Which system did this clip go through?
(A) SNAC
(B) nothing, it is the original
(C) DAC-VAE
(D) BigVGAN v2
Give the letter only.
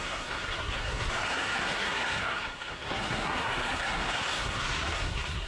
A